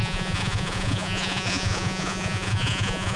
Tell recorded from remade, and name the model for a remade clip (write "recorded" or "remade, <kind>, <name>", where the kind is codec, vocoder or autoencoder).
remade, vocoder, Vocos